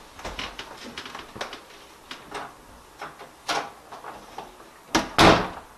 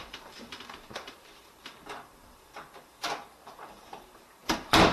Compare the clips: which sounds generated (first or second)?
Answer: second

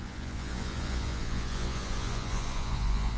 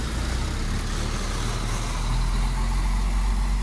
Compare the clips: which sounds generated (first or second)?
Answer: first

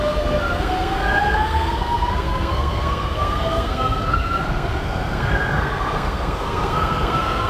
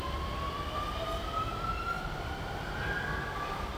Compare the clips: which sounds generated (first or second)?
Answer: first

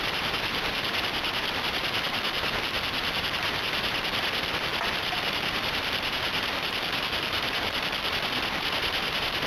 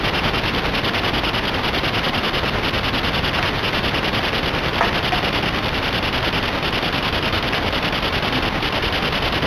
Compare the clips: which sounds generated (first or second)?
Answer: first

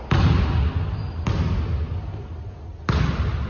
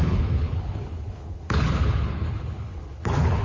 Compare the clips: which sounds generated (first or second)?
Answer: second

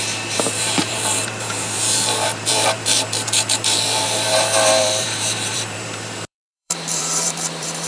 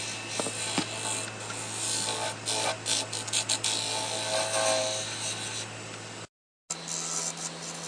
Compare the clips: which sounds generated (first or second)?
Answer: first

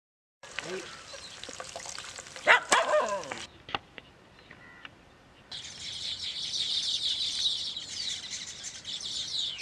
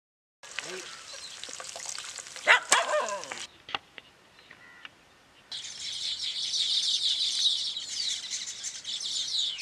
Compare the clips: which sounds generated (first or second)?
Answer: first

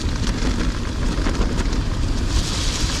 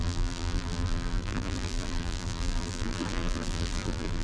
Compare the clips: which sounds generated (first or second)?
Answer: second